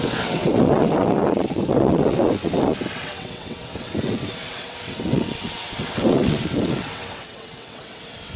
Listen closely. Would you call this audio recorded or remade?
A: remade